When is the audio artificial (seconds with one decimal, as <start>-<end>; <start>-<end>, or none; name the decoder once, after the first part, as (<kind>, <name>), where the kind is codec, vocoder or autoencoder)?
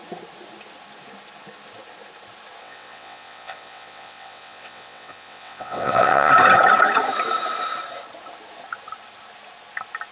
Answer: 2.6-6.3 (vocoder, WaveNeXt)